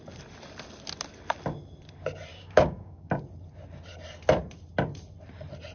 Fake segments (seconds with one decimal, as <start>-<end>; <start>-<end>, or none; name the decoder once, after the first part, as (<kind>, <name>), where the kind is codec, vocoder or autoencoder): 2.3-3.2 (codec, DAC)